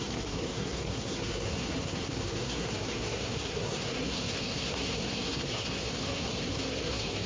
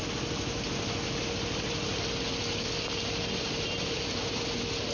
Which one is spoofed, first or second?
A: first